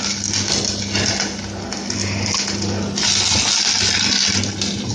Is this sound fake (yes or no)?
no